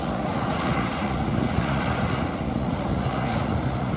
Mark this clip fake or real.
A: fake